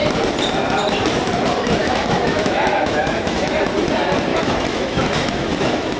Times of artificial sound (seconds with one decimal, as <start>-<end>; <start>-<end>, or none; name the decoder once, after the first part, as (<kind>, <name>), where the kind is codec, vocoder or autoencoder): 1.8-3.5 (autoencoder, DAC-VAE); 4.3-6.0